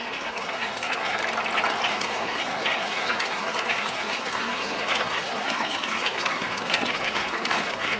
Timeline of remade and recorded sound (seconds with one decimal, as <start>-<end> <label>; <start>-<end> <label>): 0.0-1.2 remade; 1.2-1.9 recorded; 1.9-8.0 remade